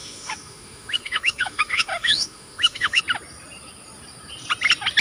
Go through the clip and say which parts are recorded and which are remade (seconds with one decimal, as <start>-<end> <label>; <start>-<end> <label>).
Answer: 0.0-3.0 remade; 3.0-5.0 recorded